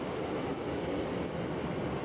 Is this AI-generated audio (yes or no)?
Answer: no